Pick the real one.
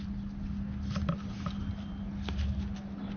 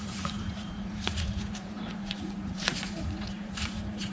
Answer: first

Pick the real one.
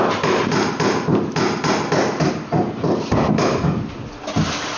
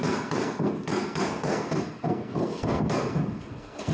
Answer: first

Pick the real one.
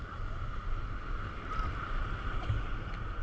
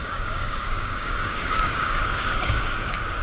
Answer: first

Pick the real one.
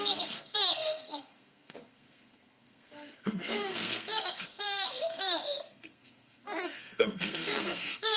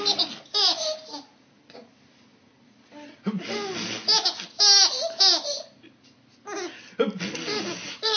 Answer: second